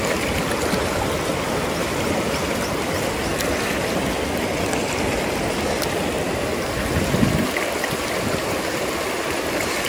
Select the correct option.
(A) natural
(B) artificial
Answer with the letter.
A